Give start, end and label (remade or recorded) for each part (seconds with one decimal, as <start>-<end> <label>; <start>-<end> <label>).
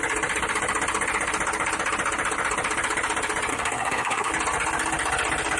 0.0-3.5 recorded; 3.5-4.3 remade; 4.3-5.6 recorded